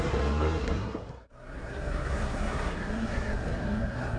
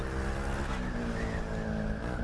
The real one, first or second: second